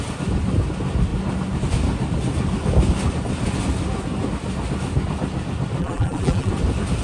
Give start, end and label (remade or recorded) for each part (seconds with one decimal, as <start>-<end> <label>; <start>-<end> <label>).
0.0-5.8 recorded; 5.8-6.5 remade; 6.5-7.0 recorded